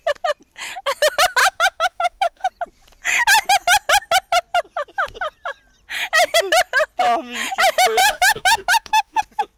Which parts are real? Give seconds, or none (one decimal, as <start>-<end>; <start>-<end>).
0.0-1.4; 2.5-8.0; 9.2-9.6